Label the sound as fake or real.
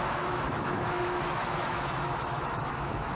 fake